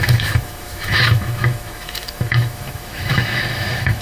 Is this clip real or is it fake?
fake